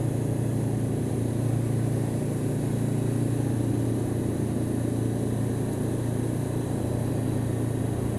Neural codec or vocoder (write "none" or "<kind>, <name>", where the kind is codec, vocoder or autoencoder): none